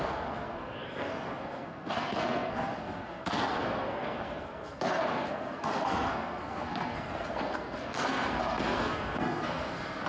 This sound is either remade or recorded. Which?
remade